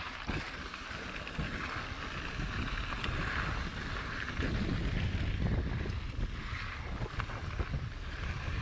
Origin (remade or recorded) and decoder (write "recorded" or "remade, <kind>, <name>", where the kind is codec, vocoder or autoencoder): recorded